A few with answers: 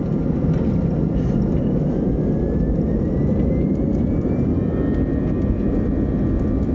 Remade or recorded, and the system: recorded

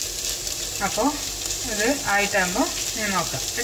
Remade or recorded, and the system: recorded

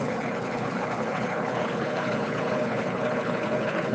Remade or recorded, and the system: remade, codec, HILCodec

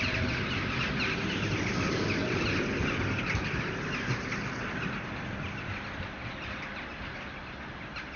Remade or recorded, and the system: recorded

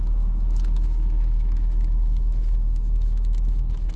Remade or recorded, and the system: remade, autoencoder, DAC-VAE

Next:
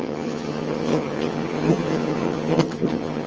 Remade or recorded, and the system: remade, vocoder, HiFi-GAN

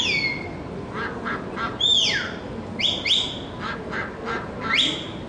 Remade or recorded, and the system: recorded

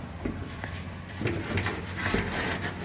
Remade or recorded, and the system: remade, vocoder, BigVGAN v2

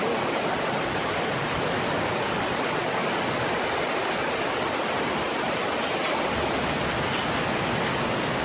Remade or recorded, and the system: recorded